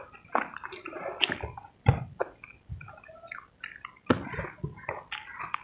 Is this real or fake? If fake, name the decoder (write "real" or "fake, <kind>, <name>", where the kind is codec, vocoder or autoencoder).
real